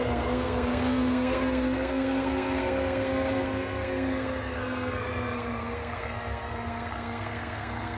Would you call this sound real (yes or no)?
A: no